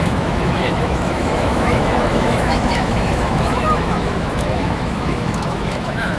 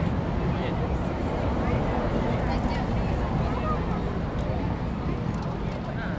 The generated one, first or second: first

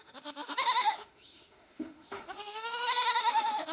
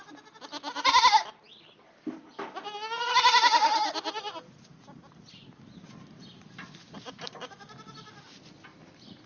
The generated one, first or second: first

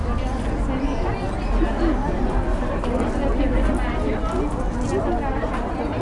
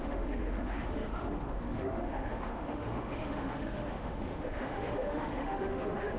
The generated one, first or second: second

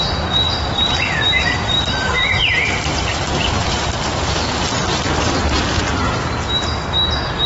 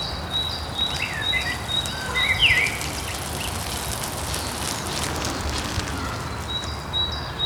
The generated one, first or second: first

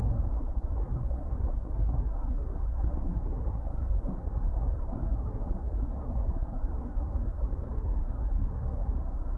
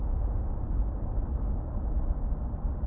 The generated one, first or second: first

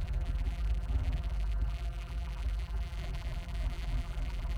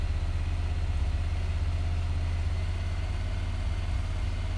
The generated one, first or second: first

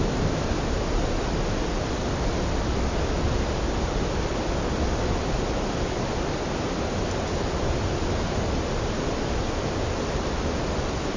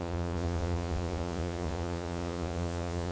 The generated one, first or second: second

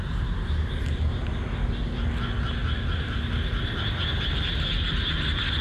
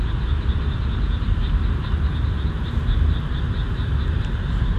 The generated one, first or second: second